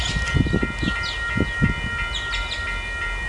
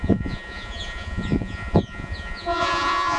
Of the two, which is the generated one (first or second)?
second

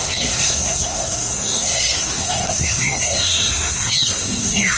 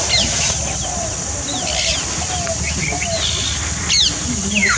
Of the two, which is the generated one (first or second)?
first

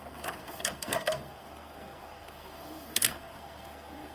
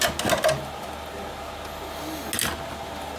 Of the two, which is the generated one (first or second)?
first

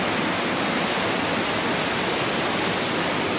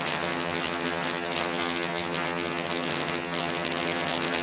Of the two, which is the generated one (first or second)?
second